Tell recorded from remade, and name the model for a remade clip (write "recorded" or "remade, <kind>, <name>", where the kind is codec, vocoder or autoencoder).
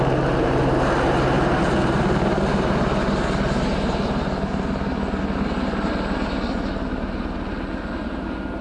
recorded